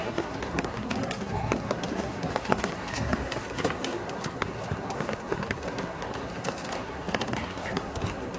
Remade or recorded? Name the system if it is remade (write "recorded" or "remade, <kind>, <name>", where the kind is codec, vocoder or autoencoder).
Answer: remade, codec, SNAC